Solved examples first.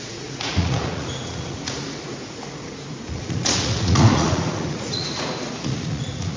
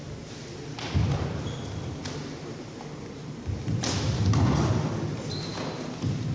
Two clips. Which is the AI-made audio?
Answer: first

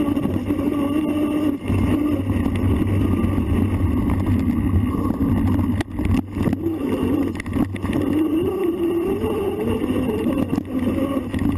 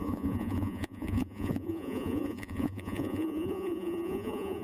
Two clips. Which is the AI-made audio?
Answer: second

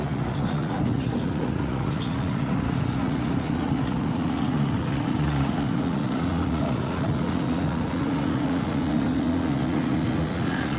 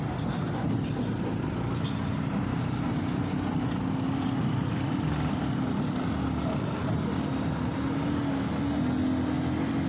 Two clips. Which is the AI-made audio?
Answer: first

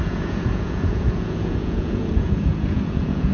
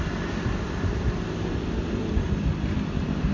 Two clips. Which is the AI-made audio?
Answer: first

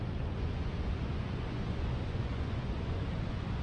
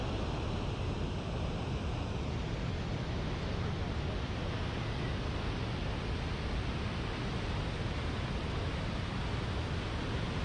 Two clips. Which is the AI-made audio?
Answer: first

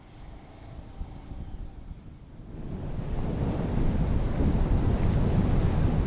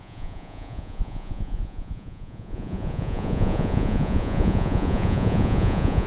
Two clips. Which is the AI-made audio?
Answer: second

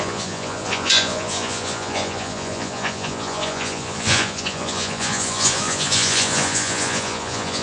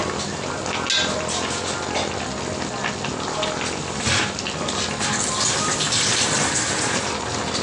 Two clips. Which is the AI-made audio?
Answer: first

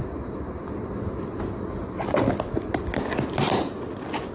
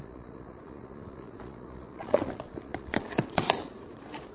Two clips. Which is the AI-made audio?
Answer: second